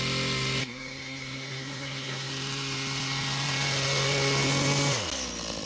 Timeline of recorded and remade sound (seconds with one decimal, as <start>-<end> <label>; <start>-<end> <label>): 0.0-0.6 recorded; 0.6-2.3 remade; 2.3-5.7 recorded